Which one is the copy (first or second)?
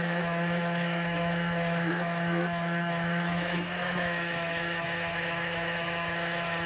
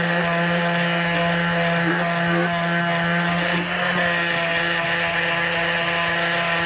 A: first